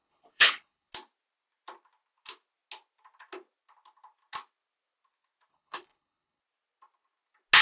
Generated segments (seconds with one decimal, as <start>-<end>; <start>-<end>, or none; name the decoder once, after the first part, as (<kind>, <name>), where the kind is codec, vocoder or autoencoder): 0.0-0.9 (codec, HILCodec); 5.5-6.4